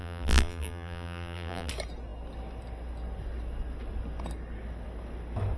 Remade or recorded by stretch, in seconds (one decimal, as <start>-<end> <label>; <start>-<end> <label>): 0.0-1.7 remade; 1.7-5.6 recorded